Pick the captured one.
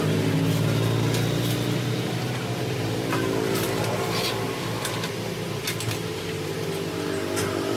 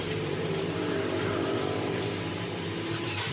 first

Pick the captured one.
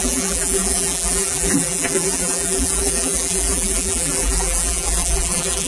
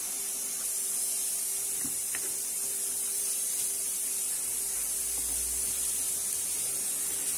second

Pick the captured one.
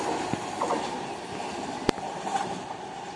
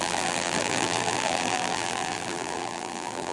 first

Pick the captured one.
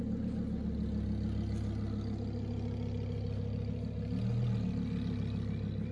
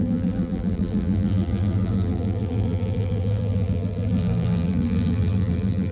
first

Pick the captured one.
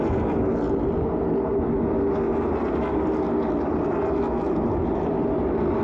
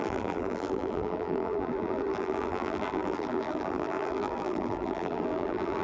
first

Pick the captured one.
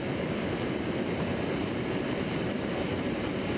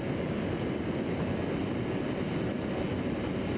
second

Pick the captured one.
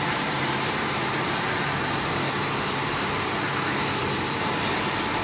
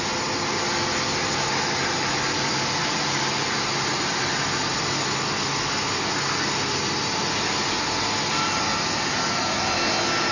second